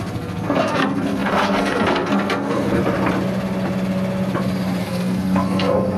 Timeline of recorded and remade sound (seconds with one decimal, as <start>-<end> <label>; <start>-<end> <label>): 0.0-2.8 remade; 2.8-4.8 recorded; 4.8-6.0 remade